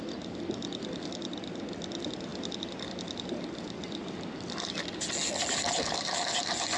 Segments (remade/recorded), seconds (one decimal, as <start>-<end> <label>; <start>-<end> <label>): 0.0-6.8 recorded